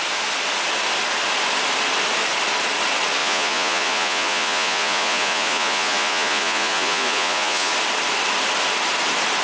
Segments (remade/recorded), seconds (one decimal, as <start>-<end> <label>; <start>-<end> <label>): 0.0-3.2 recorded; 3.2-7.7 remade; 7.7-9.4 recorded